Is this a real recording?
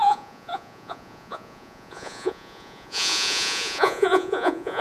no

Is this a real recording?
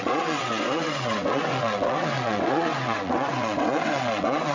no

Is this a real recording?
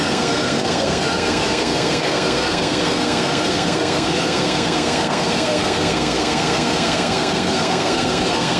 no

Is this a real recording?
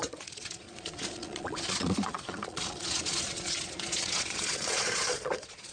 no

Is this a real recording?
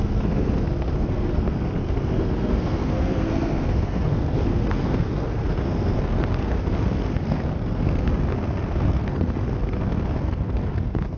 no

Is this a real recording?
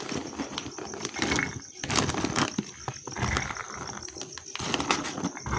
yes